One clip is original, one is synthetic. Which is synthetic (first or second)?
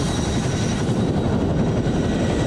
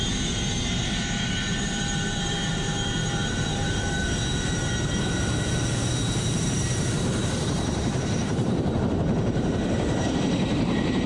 second